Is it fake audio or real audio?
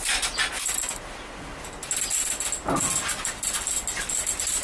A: real